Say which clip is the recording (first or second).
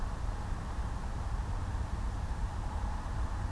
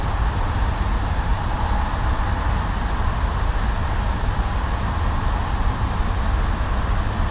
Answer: second